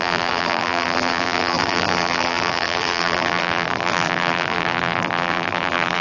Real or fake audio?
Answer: fake